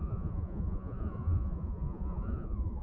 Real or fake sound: fake